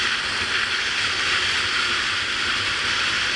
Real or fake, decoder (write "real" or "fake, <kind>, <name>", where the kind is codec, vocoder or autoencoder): real